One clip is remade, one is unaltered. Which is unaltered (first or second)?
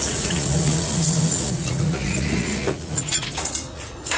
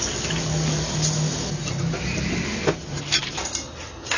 second